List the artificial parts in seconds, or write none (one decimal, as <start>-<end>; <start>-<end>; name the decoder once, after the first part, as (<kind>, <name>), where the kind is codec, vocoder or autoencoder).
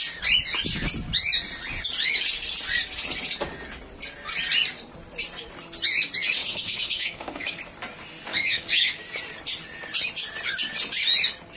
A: 6.4-7.6 (codec, DAC); 8.3-9.0